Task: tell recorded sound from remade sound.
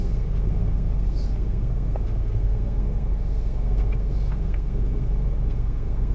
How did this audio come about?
remade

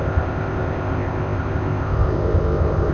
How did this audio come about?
remade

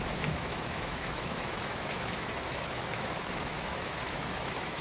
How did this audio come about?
remade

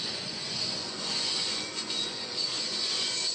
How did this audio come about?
remade